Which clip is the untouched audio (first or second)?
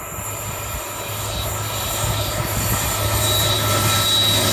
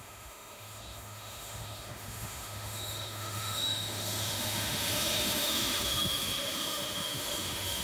first